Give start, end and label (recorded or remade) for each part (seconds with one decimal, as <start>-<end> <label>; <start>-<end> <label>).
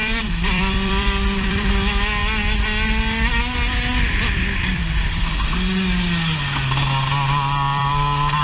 0.0-1.7 remade; 1.7-4.7 recorded; 4.7-5.3 remade; 5.3-7.1 recorded; 7.1-7.9 remade; 7.9-8.4 recorded